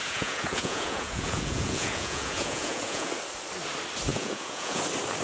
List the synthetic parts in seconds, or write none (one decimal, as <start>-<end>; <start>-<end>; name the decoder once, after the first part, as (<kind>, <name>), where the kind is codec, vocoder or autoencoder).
0.0-3.1 (vocoder, Vocos); 4.1-4.8